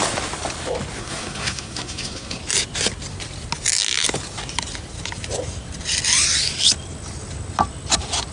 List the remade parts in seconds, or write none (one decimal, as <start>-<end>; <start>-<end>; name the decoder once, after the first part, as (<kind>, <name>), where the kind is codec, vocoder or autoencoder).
1.0-2.4 (codec, SNAC)